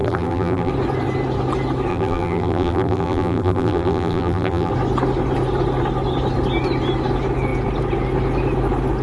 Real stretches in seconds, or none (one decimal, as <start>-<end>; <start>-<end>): 0.7-1.9; 4.7-9.0